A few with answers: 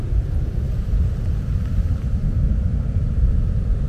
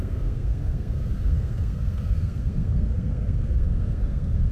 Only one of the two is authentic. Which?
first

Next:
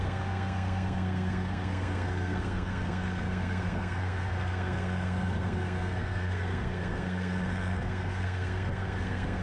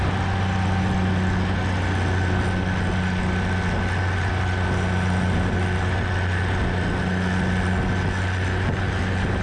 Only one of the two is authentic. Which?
second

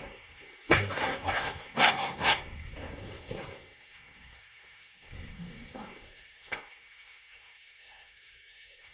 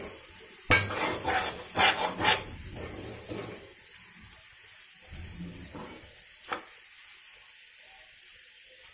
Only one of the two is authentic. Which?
second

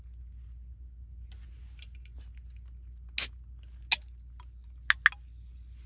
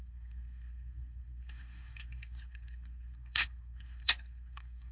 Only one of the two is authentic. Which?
first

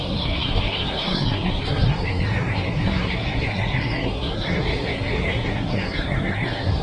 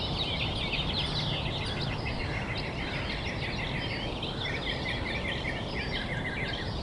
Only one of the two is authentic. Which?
second